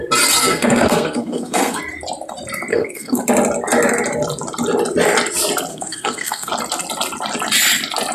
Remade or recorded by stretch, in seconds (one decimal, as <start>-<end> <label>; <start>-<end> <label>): 0.0-0.4 recorded; 0.4-1.8 remade; 1.8-2.7 recorded; 2.7-3.2 remade; 3.2-5.7 recorded; 5.7-6.5 remade; 6.5-8.1 recorded